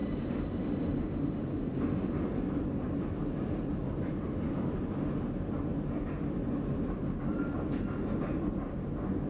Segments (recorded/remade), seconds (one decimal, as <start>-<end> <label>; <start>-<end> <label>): 0.0-4.9 remade; 4.9-5.7 recorded; 5.7-7.0 remade; 7.0-9.3 recorded